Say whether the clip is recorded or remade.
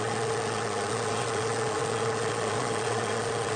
remade